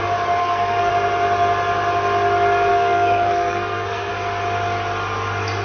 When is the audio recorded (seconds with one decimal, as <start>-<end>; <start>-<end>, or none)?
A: 0.0-0.4; 0.9-2.7; 4.1-5.6